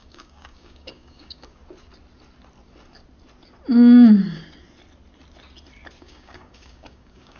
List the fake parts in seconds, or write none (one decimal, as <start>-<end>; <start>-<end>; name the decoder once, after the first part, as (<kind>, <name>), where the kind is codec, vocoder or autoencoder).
0.0-1.6 (codec, DAC); 6.0-7.4